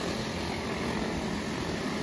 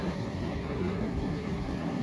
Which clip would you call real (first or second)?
first